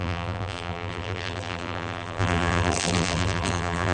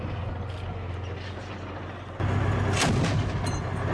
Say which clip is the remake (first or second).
first